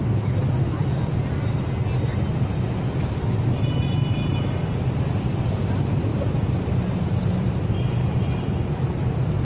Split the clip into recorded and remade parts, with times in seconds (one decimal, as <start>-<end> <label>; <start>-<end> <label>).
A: 0.0-2.1 recorded; 2.1-4.7 remade; 4.7-6.1 recorded; 6.1-9.4 remade